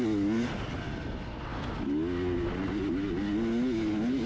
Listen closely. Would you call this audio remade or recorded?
recorded